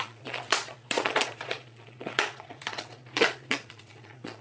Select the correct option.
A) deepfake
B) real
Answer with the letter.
A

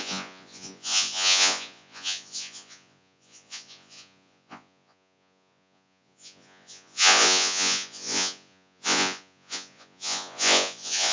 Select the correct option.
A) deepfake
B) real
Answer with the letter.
A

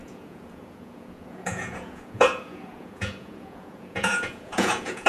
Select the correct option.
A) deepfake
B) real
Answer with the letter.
A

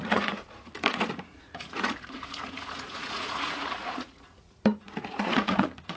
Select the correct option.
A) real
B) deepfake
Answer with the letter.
B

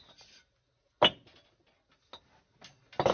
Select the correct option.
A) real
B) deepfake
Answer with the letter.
A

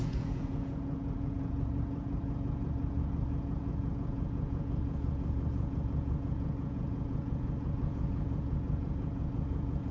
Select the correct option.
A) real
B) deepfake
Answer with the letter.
B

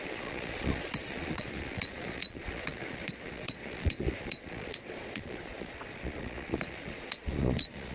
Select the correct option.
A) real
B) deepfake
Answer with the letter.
B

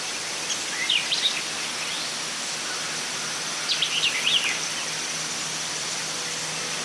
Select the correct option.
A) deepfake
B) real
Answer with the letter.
B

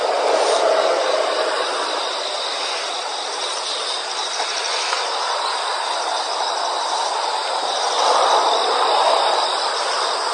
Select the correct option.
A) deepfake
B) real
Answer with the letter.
B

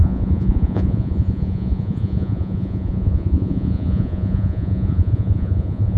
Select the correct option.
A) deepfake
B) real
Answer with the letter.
A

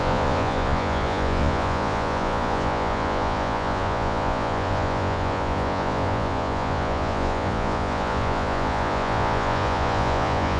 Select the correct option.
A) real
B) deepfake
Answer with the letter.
B